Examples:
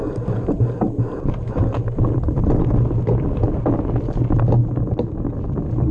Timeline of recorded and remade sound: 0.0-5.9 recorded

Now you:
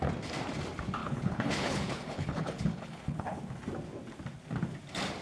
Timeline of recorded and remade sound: 0.0-1.0 recorded; 1.0-3.4 remade; 3.4-5.2 recorded

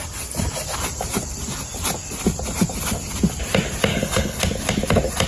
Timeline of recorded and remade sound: 0.0-3.9 recorded; 3.9-4.4 remade; 4.4-5.3 recorded

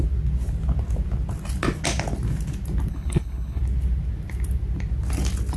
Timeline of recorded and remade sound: 0.0-2.9 recorded; 2.9-3.6 remade; 3.6-5.6 recorded

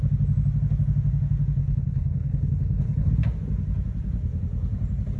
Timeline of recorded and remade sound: 0.0-1.6 recorded; 1.6-3.1 remade; 3.1-5.2 recorded

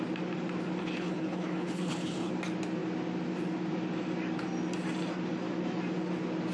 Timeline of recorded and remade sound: 0.0-0.8 recorded; 0.8-2.3 remade; 2.3-6.5 recorded